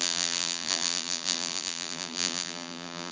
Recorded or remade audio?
remade